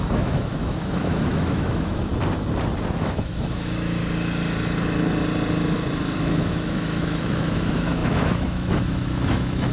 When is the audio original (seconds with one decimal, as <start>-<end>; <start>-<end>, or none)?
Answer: 2.1-3.0; 4.0-6.2